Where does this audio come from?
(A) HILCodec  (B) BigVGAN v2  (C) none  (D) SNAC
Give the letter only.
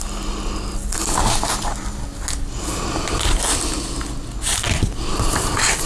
C